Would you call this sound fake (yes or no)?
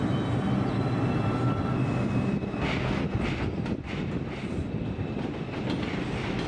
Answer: no